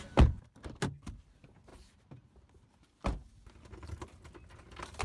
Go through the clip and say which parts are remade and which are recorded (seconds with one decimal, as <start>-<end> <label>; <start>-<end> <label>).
0.0-5.0 recorded